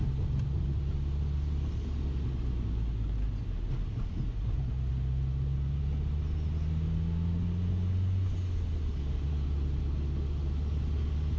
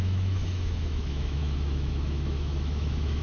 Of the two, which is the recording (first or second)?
first